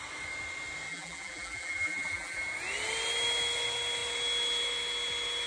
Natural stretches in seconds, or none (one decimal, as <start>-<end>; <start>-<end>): 0.0-0.9; 2.4-5.5